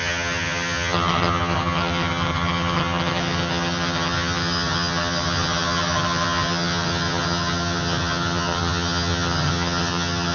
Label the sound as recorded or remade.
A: remade